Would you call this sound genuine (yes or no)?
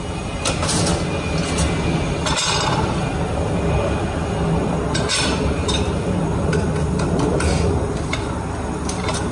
yes